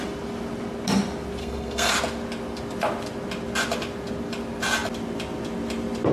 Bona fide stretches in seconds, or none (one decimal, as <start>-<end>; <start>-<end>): 0.0-1.4; 1.9-6.1